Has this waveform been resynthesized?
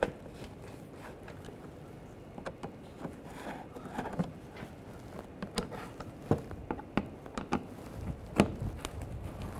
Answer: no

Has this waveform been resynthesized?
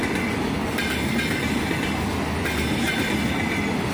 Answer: no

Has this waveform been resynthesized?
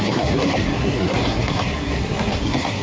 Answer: yes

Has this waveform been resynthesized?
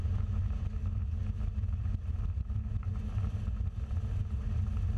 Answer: no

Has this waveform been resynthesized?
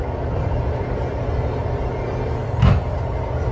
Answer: no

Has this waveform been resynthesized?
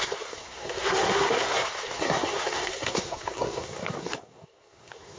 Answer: yes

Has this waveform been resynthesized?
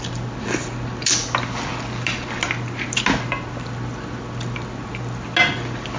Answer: no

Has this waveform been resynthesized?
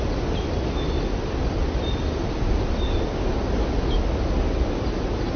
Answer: no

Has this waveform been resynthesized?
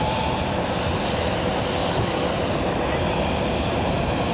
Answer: no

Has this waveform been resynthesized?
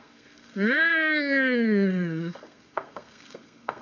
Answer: yes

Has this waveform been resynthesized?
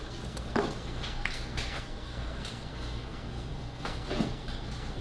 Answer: yes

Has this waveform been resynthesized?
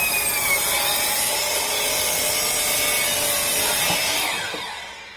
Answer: no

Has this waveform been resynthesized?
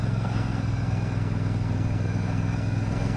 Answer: yes